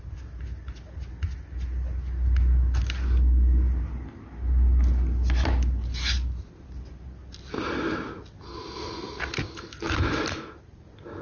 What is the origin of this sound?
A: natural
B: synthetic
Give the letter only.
A